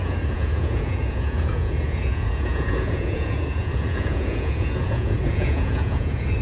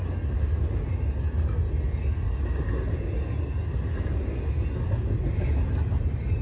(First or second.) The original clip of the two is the second